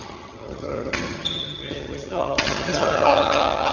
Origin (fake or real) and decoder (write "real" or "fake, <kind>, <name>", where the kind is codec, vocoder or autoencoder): fake, vocoder, HiFi-GAN